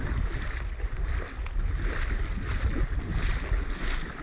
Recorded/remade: recorded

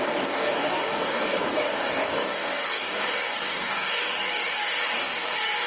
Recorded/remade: remade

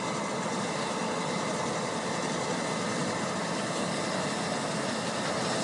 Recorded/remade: remade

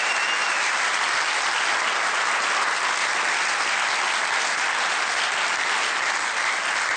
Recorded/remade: recorded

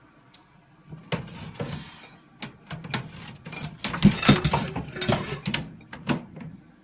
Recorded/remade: recorded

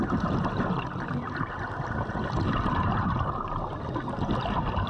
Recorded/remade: recorded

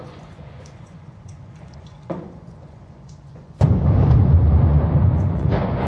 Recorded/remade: remade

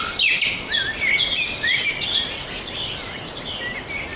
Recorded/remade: recorded